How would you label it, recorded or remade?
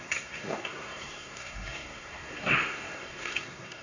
remade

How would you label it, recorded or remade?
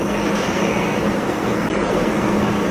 remade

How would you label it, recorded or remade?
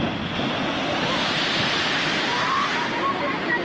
recorded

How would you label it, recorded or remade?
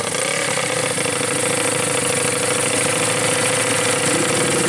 recorded